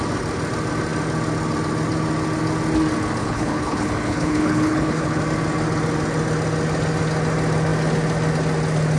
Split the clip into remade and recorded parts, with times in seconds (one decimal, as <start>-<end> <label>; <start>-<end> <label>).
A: 0.0-3.2 recorded; 3.2-5.2 remade; 5.2-9.0 recorded